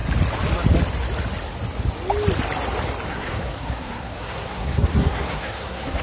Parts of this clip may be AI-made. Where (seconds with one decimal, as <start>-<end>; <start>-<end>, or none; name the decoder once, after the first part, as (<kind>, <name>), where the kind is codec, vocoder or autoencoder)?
3.1-6.0 (codec, SNAC)